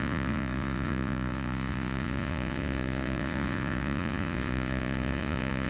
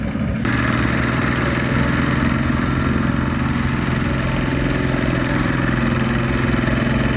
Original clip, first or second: second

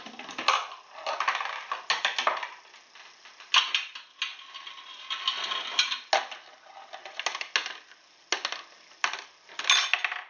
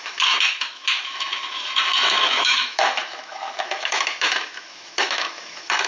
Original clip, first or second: first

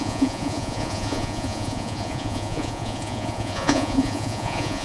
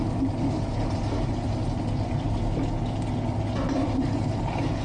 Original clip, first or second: second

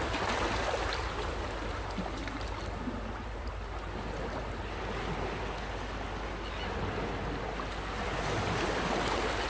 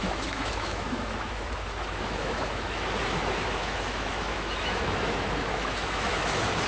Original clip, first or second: first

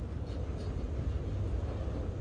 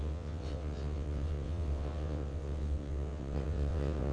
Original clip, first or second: first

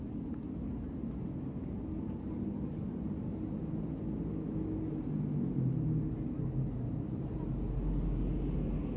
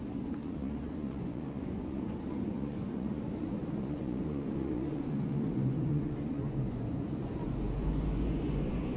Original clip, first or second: first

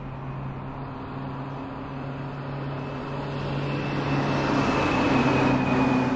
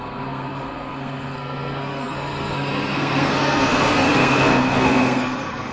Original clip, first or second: first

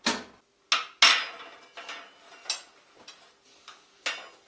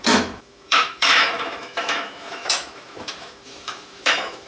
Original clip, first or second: first